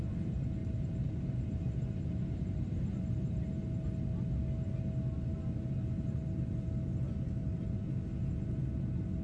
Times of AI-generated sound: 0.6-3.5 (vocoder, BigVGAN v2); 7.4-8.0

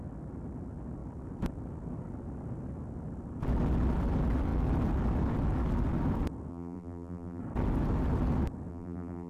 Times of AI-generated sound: 6.5-7.4 (vocoder, BigVGAN v2); 8.7-9.3

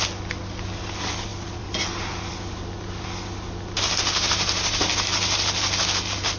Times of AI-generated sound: 1.3-2.6 (vocoder, BigVGAN v2)

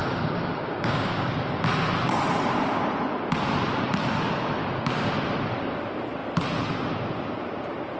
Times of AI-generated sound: 0.0-1.3 (codec, DAC); 4.6-5.1

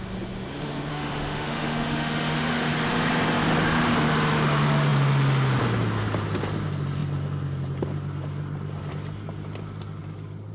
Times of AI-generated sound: 0.9-2.7 (autoencoder, DAC-VAE)

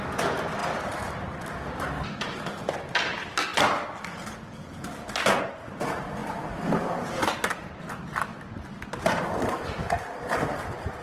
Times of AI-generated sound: none

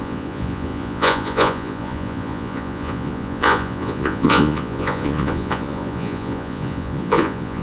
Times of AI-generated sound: 0.0-7.6 (vocoder, Vocos)

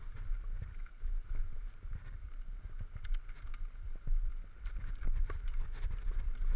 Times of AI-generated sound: none